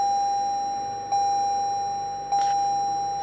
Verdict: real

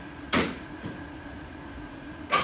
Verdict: fake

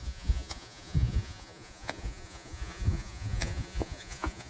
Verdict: fake